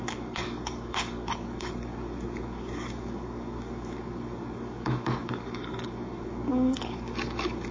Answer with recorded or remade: remade